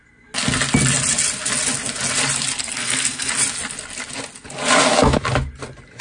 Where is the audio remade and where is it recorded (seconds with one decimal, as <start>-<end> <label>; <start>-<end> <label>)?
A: 0.0-2.6 recorded; 2.6-3.3 remade; 3.3-6.0 recorded